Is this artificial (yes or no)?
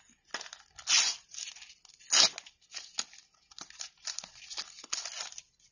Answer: no